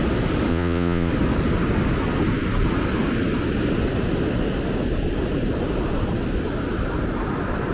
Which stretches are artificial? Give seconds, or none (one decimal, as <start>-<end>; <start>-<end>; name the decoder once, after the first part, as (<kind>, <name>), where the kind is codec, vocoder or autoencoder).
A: 0.5-1.1 (vocoder, Vocos)